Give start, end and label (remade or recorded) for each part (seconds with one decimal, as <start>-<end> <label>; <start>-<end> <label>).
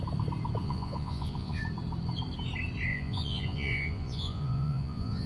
0.0-0.6 recorded; 0.6-1.6 remade; 1.6-2.9 recorded; 2.9-5.3 remade